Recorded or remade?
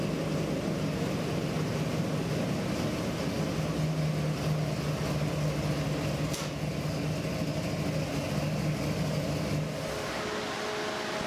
recorded